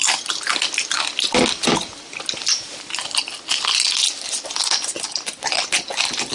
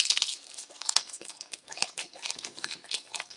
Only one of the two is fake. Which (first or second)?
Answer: second